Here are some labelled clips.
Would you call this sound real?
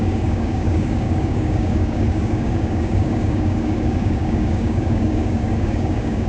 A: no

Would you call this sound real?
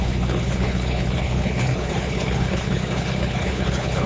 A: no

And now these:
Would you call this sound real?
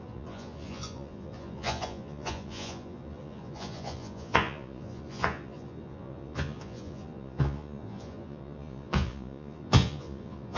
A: no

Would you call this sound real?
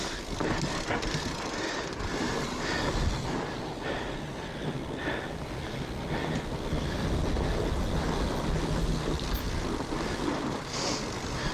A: yes